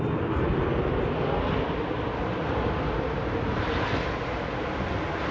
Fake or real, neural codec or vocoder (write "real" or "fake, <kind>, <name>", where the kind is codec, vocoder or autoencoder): real